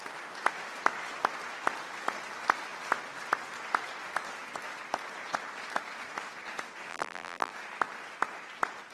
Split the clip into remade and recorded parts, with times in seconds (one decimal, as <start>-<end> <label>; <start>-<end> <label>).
0.0-6.9 recorded; 6.9-7.5 remade; 7.5-8.9 recorded